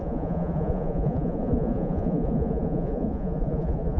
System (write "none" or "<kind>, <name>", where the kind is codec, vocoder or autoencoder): vocoder, Vocos